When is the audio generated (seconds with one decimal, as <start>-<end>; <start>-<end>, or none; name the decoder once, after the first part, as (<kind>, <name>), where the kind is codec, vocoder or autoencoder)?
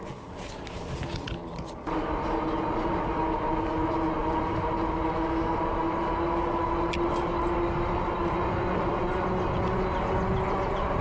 none